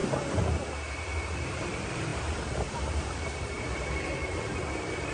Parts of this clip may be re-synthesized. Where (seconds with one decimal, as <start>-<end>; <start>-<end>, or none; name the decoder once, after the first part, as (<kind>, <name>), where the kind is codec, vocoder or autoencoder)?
1.5-5.1 (vocoder, BigVGAN v2)